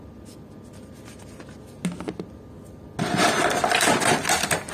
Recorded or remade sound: recorded